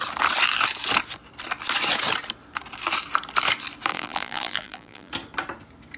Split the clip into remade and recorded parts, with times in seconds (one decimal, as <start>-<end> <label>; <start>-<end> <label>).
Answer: 0.0-3.9 recorded; 3.9-5.1 remade; 5.1-6.0 recorded